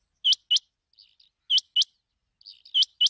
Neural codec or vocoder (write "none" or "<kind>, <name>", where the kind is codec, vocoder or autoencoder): none